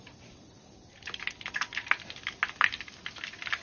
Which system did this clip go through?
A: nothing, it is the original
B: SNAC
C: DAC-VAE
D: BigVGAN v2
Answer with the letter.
A